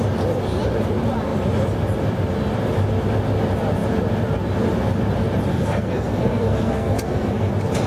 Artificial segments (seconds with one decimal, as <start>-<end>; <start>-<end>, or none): 5.5-7.5